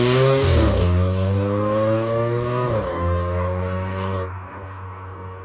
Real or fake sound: fake